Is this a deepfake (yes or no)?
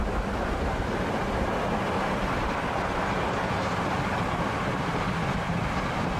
no